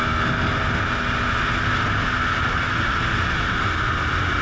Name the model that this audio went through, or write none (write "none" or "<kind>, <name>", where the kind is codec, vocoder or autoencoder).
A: none